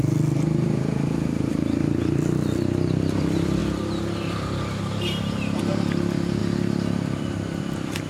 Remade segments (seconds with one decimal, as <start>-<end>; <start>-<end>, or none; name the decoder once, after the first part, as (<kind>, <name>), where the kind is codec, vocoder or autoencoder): 0.0-3.6 (vocoder, BigVGAN v2); 5.6-8.1